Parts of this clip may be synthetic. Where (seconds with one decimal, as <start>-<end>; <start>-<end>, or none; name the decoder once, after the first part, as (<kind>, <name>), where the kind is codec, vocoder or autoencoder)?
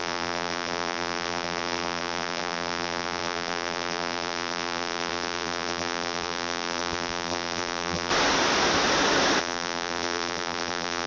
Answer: 0.0-8.1 (vocoder, BigVGAN v2); 9.4-11.1